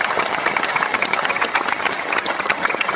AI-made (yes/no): yes